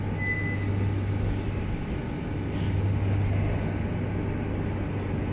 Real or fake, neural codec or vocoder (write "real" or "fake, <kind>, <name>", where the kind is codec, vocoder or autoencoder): real